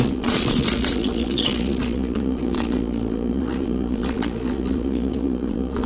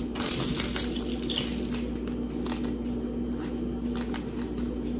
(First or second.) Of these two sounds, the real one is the second